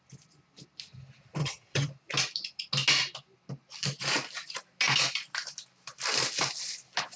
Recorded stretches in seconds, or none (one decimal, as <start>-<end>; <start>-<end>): 0.0-1.4; 1.9-7.2